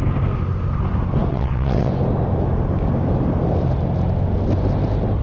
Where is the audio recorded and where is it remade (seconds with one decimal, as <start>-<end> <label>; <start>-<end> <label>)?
0.0-1.3 recorded; 1.3-1.9 remade; 1.9-5.2 recorded